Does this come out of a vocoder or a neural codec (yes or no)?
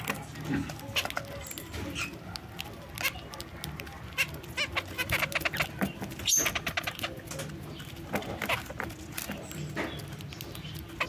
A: no